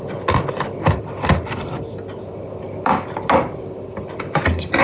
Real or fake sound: real